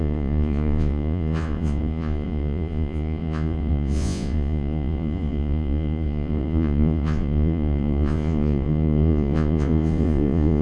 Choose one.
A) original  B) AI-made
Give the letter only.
B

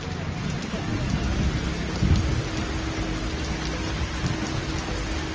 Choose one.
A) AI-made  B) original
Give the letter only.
B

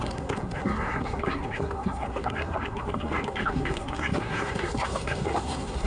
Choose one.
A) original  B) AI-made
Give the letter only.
B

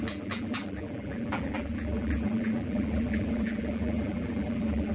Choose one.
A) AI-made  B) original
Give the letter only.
A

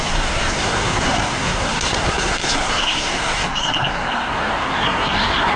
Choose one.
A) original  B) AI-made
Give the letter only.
B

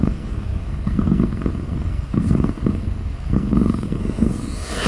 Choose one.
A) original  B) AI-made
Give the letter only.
B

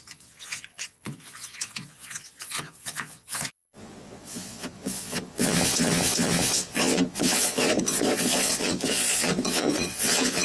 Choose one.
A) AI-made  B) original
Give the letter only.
A